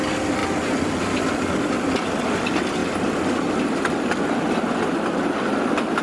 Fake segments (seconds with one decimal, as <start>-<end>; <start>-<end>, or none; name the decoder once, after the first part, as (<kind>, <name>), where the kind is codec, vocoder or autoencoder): none